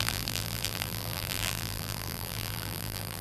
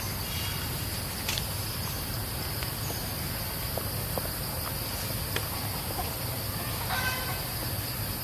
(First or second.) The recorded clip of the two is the second